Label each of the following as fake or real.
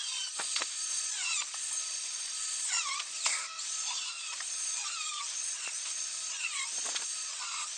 fake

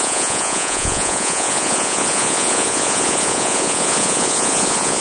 fake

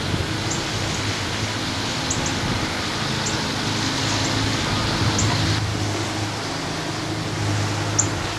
real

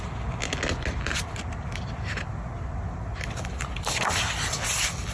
real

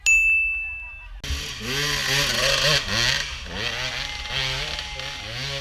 real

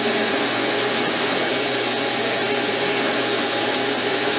fake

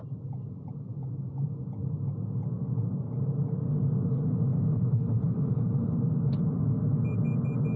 real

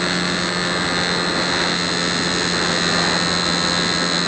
real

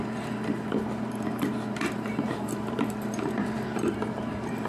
fake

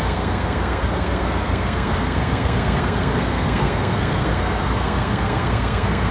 fake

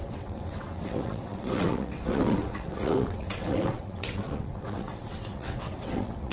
fake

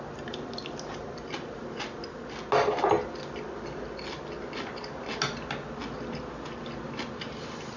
real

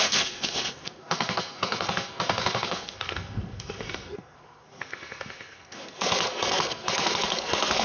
fake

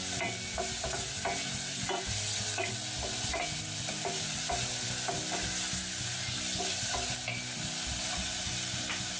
real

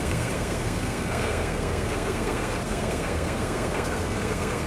fake